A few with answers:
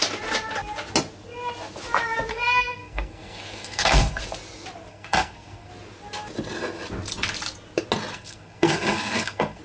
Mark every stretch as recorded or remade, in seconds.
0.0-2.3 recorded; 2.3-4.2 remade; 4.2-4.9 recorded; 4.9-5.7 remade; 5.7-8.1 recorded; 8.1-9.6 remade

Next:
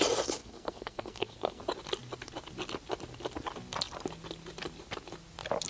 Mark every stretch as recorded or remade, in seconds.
0.0-0.4 recorded; 0.4-1.6 remade; 1.6-5.7 recorded

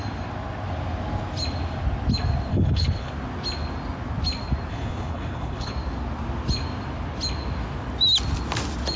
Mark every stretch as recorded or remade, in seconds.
0.0-2.5 recorded; 2.5-3.1 remade; 3.1-4.7 recorded; 4.7-5.7 remade; 5.7-9.0 recorded

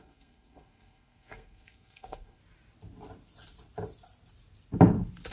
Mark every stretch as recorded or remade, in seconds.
0.0-2.4 remade; 2.4-5.3 recorded